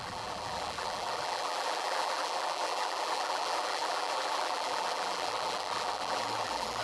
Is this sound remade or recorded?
remade